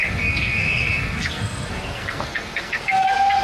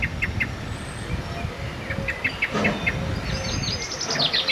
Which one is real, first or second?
second